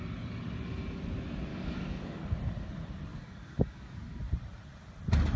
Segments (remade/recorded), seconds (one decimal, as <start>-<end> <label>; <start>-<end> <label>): 0.0-1.5 recorded; 1.5-2.2 remade; 2.2-3.1 recorded; 3.1-4.2 remade; 4.2-5.4 recorded